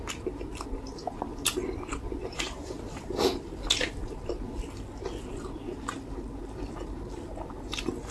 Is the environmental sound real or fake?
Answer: real